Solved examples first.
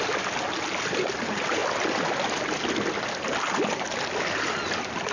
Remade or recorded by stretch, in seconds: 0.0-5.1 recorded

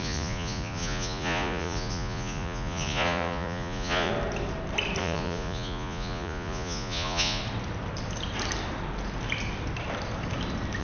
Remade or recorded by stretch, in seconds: 0.0-4.1 remade; 4.1-5.0 recorded; 5.0-7.4 remade; 7.4-10.8 recorded

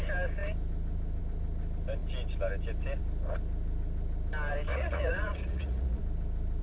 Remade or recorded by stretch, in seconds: 0.0-4.7 recorded; 4.7-6.0 remade; 6.0-6.6 recorded

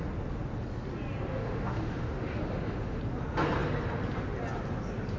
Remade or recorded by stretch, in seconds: 0.0-1.3 recorded; 1.3-3.0 remade; 3.0-5.2 recorded

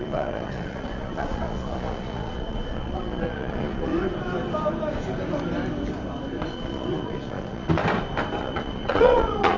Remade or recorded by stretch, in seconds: 0.0-3.9 remade; 3.9-6.5 recorded; 6.5-7.8 remade; 7.8-8.4 recorded; 8.4-9.6 remade

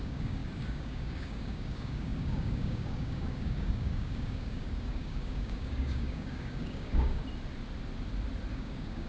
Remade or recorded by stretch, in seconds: 0.0-7.2 remade; 7.2-8.5 recorded; 8.5-9.1 remade